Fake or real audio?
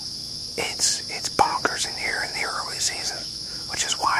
fake